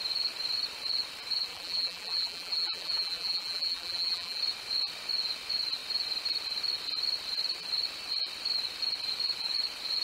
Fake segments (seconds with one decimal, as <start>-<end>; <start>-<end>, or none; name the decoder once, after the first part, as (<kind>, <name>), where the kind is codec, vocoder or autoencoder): 1.5-4.4 (vocoder, BigVGAN v2)

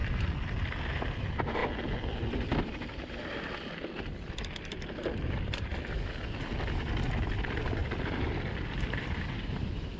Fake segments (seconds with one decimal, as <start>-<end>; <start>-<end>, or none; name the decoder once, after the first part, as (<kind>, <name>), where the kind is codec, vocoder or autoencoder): 1.0-1.6 (vocoder, BigVGAN v2); 3.2-5.7; 7.3-7.8; 8.7-10.0

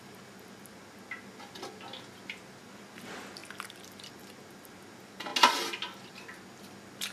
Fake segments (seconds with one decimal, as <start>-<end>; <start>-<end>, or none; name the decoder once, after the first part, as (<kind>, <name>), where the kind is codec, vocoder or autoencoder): none

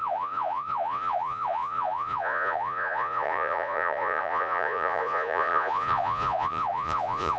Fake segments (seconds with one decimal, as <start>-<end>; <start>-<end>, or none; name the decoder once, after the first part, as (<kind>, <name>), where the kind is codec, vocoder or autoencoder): 0.0-7.4 (vocoder, Vocos)

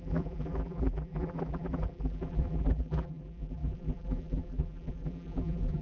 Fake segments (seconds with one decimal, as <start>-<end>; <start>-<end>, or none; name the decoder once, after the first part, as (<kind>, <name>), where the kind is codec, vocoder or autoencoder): 0.0-5.8 (vocoder, BigVGAN v2)